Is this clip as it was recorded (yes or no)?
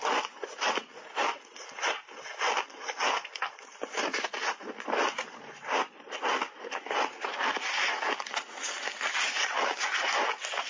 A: yes